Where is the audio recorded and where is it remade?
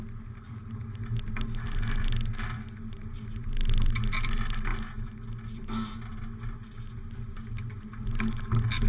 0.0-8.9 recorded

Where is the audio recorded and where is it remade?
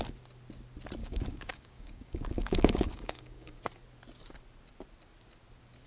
0.0-1.0 recorded; 1.0-3.6 remade; 3.6-5.9 recorded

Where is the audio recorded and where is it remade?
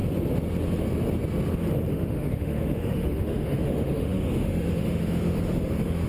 0.0-1.9 recorded; 1.9-6.1 remade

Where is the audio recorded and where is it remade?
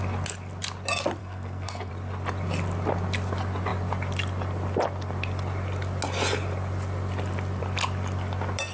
0.0-1.2 recorded; 1.2-1.9 remade; 1.9-8.7 recorded